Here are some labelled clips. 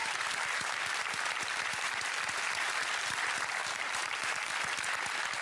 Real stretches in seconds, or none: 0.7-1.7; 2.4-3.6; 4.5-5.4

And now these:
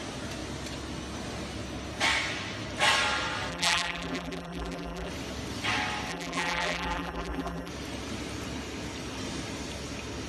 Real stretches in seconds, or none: 0.0-3.5; 5.1-6.1; 7.7-10.3

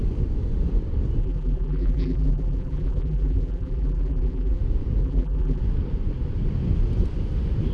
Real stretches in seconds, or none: 0.0-1.2; 4.6-5.0; 5.6-7.7

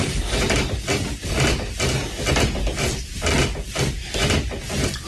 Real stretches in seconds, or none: 0.0-5.1